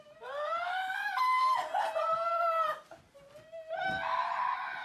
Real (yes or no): yes